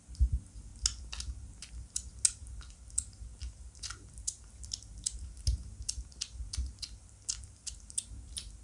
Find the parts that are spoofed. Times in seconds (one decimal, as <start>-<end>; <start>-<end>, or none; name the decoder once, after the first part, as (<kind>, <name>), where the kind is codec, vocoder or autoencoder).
none